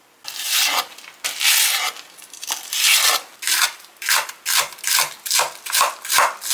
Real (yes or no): yes